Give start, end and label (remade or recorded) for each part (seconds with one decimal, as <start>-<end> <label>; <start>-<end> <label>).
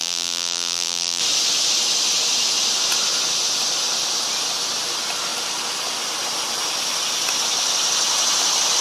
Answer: 0.0-1.2 remade; 1.2-8.8 recorded